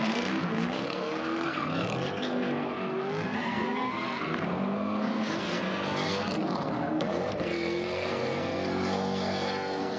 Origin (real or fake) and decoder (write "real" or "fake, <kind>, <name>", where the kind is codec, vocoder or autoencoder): fake, codec, SNAC